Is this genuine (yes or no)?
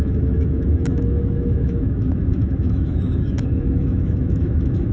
no